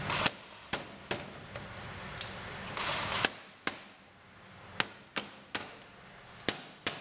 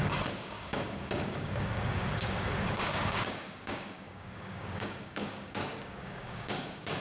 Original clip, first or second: first